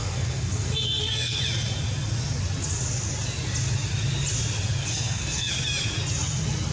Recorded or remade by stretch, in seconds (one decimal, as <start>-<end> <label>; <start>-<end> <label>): 0.0-1.4 remade; 1.4-4.8 recorded; 4.8-5.5 remade; 5.5-6.7 recorded